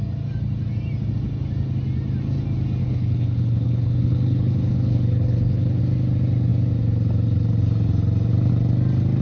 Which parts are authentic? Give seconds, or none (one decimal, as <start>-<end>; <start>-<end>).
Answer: 0.0-2.8; 5.8-9.2